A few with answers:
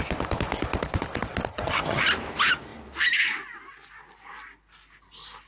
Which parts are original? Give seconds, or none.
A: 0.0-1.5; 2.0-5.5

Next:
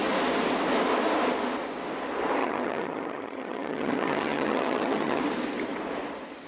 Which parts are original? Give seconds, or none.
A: 0.0-2.4; 5.2-6.5

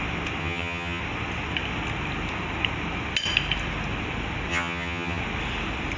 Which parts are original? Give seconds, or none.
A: 0.0-0.4; 1.0-4.5; 5.2-6.0

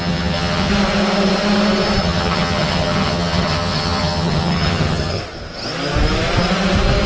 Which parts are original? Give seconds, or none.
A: 0.7-2.0; 5.2-7.1